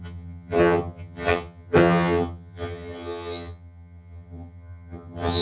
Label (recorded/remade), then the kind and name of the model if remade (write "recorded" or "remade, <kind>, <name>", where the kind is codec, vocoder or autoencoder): remade, vocoder, HiFi-GAN